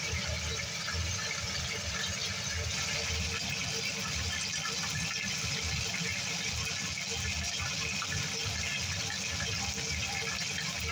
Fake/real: real